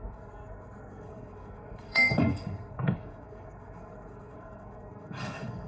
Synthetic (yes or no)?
yes